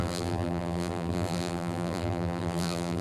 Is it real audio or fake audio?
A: fake